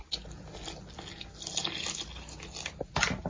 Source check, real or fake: real